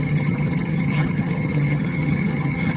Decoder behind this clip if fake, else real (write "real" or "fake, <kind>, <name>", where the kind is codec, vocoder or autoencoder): fake, vocoder, HiFi-GAN